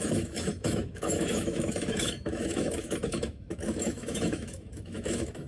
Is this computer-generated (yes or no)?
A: yes